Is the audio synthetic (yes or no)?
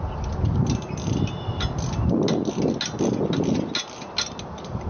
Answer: no